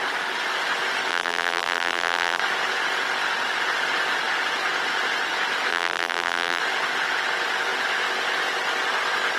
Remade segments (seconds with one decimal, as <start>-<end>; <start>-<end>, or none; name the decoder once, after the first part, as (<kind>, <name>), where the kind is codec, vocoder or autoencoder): 1.1-2.4 (vocoder, BigVGAN v2); 5.7-6.6

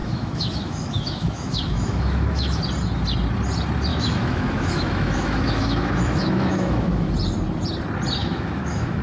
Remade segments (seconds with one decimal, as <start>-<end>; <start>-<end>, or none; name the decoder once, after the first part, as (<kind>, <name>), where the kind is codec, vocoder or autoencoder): 0.0-2.6 (autoencoder, DAC-VAE); 3.9-7.1; 8.2-9.0